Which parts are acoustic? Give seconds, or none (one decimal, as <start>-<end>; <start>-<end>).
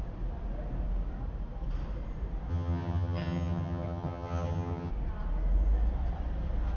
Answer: 0.0-2.5; 4.9-6.8